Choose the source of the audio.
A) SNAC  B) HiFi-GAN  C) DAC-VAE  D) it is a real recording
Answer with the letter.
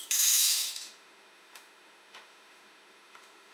C